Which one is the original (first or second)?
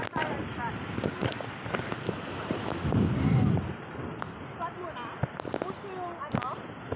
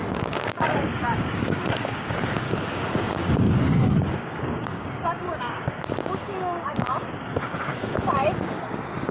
first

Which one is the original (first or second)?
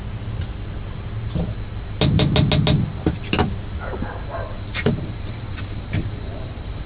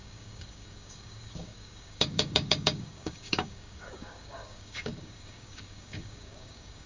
first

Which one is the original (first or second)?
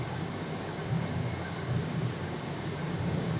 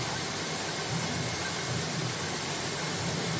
second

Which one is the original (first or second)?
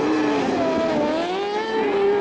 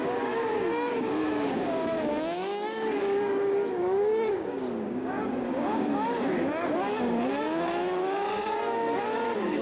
first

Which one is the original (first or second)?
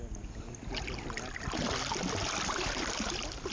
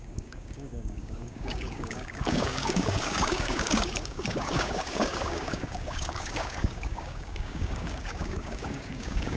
first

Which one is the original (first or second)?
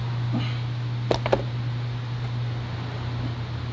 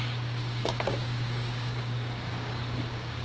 first